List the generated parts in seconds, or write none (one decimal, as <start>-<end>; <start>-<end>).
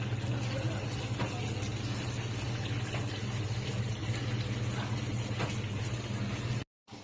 none